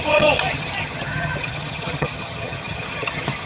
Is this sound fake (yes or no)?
yes